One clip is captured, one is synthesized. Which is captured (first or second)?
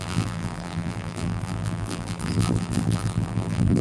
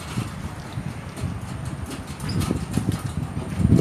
second